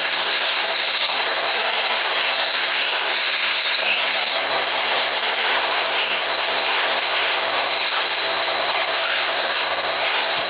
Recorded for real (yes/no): no